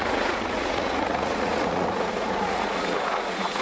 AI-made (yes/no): yes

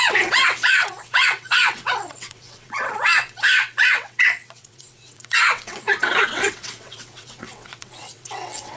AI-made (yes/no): yes